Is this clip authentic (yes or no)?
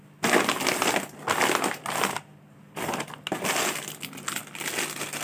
yes